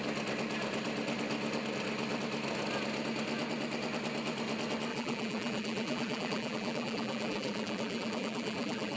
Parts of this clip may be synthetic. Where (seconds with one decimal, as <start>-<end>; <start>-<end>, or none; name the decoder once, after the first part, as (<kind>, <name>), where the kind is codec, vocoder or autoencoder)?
4.9-9.0 (vocoder, BigVGAN v2)